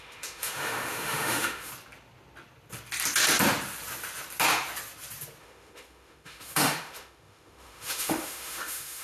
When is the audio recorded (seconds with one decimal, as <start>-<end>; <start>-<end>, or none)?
1.7-5.4

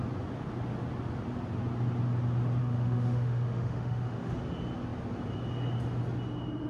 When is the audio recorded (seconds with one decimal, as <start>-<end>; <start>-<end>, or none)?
0.0-2.6; 4.3-6.7

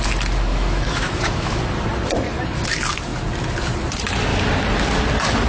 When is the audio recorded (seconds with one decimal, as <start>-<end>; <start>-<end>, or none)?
0.0-0.5; 1.6-5.5

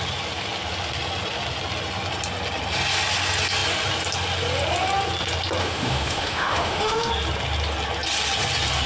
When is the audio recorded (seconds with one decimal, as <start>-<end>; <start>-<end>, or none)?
0.0-5.6; 7.1-8.9

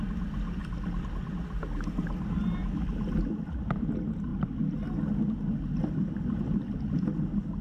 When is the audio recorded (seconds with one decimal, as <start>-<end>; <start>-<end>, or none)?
0.0-7.6